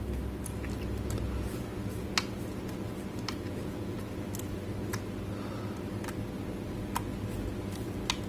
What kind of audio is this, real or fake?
real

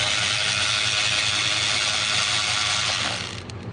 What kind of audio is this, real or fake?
real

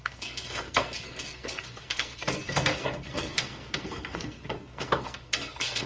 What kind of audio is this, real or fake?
fake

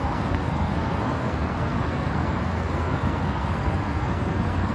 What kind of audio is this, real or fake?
fake